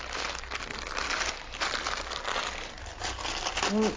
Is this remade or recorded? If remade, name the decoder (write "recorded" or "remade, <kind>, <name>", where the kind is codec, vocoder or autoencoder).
recorded